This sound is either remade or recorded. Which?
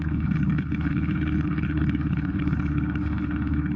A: remade